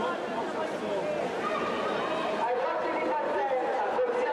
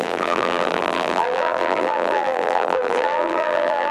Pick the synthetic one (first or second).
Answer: second